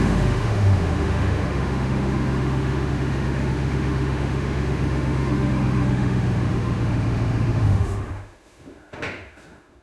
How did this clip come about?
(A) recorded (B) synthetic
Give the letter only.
B